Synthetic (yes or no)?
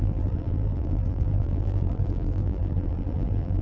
yes